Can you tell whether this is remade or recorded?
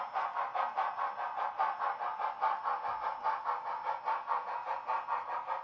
recorded